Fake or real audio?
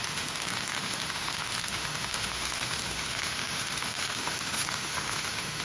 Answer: fake